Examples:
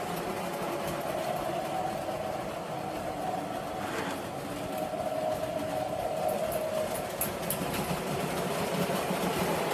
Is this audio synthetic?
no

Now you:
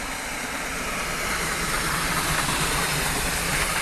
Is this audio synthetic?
no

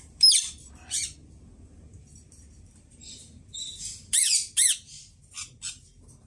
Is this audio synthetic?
no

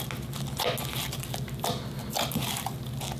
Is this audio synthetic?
no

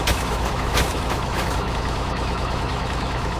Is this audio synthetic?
yes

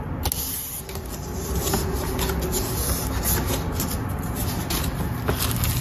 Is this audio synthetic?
no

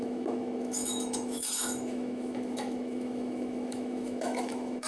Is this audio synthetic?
yes